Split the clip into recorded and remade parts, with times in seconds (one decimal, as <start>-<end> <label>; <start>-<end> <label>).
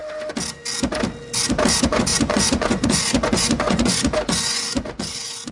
0.0-1.7 recorded; 1.7-5.5 remade